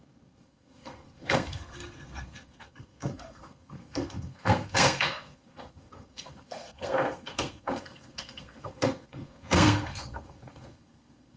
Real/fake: fake